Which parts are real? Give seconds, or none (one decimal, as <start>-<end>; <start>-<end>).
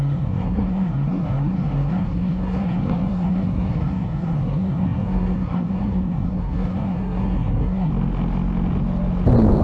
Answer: 7.9-9.6